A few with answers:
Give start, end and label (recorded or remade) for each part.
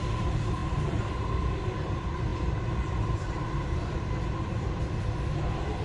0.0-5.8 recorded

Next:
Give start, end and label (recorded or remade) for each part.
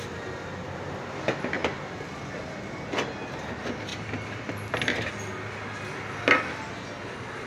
0.0-7.5 recorded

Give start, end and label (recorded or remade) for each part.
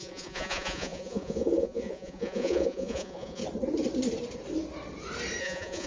0.0-3.4 remade; 3.4-5.4 recorded; 5.4-5.9 remade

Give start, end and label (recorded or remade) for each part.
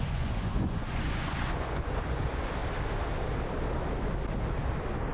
0.0-2.6 remade; 2.6-5.1 recorded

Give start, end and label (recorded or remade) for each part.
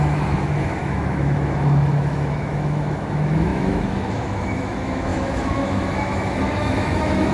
0.0-7.3 remade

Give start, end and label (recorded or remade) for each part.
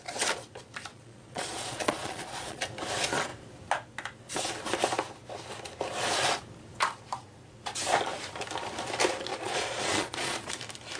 0.0-0.9 recorded; 0.9-2.6 remade; 2.6-9.3 recorded; 9.3-10.5 remade; 10.5-11.0 recorded